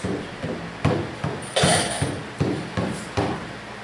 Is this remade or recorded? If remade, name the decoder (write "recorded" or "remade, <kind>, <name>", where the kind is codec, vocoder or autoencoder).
recorded